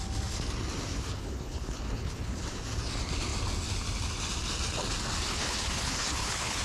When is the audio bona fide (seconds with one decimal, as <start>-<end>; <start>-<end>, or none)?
0.0-0.9; 2.5-5.3